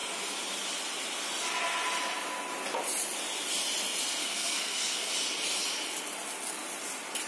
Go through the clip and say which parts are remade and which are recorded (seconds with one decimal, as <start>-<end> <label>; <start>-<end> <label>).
0.0-4.2 recorded; 4.2-5.1 remade; 5.1-7.3 recorded